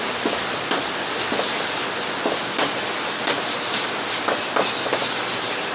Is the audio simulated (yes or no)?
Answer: no